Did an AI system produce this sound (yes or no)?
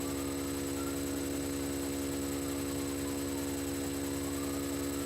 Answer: no